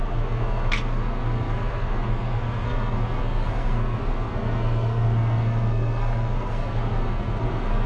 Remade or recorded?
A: remade